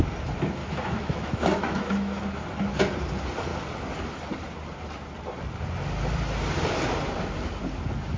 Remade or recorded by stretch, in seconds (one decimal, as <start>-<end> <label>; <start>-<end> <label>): 0.0-0.6 recorded; 0.6-2.2 remade; 2.2-8.2 recorded